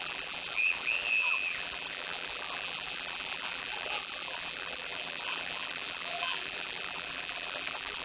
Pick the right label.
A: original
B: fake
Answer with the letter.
B